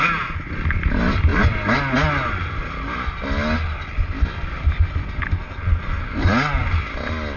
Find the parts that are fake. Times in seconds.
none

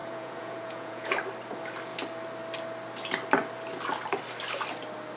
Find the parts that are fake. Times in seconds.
0.0-1.1 (vocoder, Vocos)

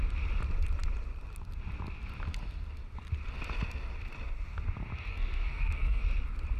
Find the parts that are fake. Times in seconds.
5.1-6.0 (codec, SNAC)

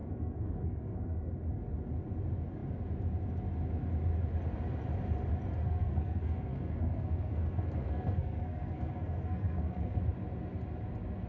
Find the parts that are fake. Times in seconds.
0.0-1.3 (codec, SNAC); 5.6-10.0

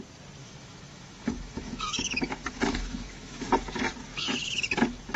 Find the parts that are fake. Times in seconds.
0.4-3.5 (autoencoder, DAC-VAE); 4.1-4.8